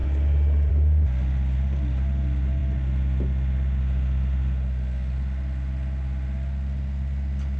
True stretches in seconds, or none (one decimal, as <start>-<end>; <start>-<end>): 0.0-7.6